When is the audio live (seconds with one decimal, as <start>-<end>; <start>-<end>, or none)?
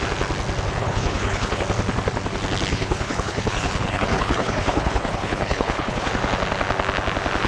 0.0-0.8; 1.6-2.7; 6.1-7.5